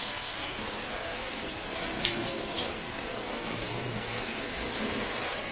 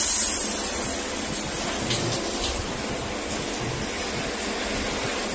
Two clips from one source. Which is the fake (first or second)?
first